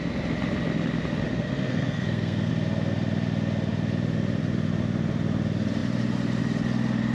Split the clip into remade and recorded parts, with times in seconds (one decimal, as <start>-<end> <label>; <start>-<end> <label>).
0.0-1.3 recorded; 1.3-2.5 remade; 2.5-7.1 recorded